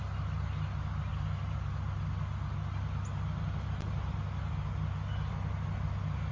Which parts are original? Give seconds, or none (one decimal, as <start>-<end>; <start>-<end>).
0.0-6.3